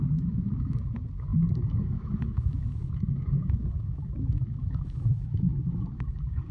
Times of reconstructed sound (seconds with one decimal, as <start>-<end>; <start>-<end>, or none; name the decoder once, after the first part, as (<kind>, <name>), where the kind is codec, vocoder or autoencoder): 0.0-6.5 (autoencoder, DAC-VAE)